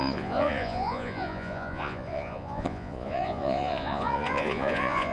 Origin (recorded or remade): remade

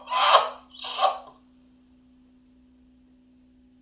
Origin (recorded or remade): recorded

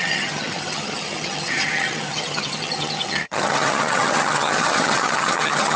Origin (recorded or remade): remade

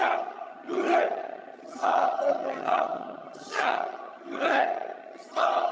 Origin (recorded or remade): remade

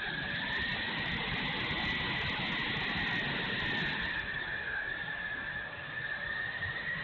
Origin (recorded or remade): recorded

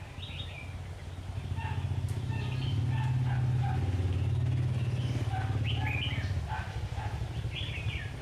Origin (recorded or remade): recorded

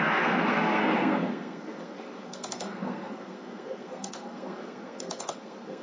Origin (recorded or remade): remade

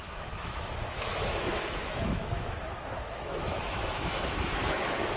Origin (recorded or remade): remade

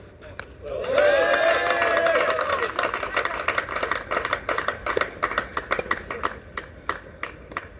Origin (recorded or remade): recorded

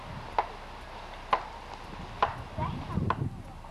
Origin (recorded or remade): recorded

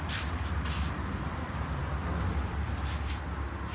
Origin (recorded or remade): remade